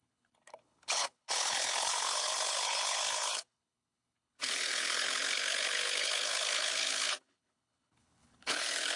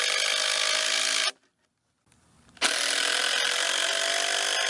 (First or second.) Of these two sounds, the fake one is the first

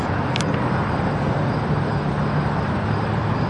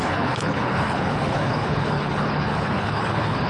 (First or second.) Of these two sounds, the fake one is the second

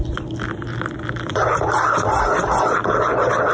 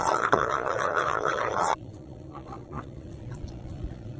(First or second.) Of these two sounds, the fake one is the second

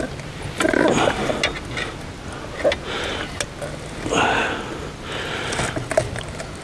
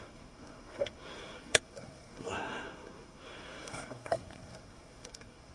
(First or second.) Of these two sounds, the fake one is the second